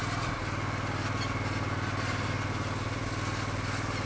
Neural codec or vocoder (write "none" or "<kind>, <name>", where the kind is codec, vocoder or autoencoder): none